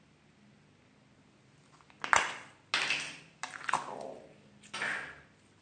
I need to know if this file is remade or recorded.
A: recorded